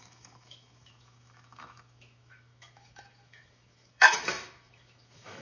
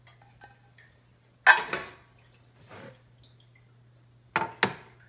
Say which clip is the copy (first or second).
first